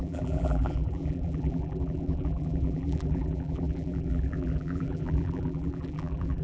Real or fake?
fake